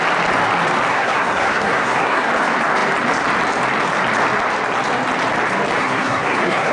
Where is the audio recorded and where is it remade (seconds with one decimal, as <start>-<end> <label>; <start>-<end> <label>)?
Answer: 0.0-0.9 recorded; 0.9-2.3 remade; 2.3-5.8 recorded; 5.8-6.7 remade

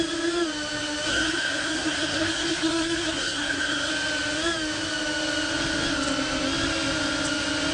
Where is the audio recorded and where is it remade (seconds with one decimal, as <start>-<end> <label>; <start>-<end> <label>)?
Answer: 0.0-1.1 recorded; 1.1-3.9 remade; 3.9-7.7 recorded